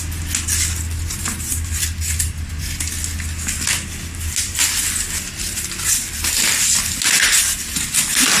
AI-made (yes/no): no